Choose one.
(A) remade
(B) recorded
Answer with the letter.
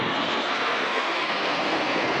A